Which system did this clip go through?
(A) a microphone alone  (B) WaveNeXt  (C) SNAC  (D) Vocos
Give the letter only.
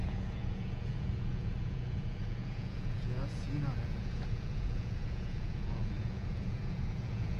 D